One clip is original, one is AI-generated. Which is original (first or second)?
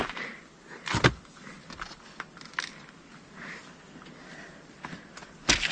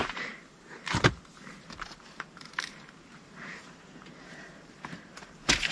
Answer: first